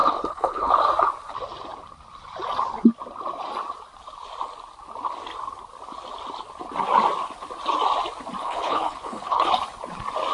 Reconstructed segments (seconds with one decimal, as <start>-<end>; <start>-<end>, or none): 0.0-0.7; 8.4-9.5